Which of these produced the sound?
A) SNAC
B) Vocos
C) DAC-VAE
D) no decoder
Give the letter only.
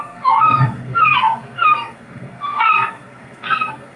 A